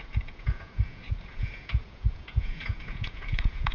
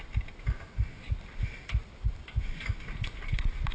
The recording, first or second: second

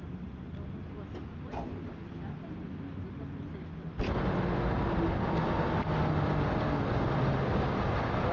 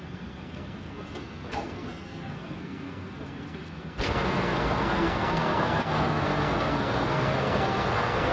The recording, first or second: first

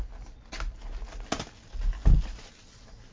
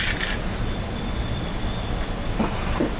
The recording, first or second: first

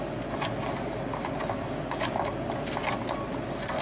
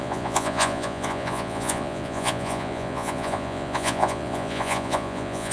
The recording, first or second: first